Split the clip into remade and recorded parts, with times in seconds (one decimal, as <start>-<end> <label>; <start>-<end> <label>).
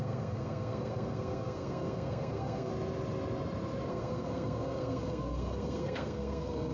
0.0-2.7 remade; 2.7-3.9 recorded; 3.9-6.7 remade